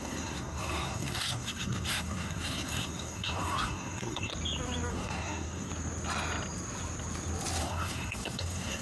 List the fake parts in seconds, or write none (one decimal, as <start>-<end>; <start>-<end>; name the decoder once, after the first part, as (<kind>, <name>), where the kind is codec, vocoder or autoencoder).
0.0-4.3 (codec, SNAC); 4.9-5.7; 7.6-8.8